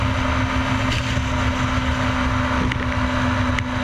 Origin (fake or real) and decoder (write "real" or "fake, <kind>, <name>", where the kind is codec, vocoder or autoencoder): real